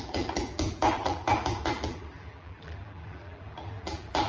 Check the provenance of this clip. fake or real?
fake